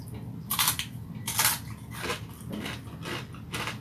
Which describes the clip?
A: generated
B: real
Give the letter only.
B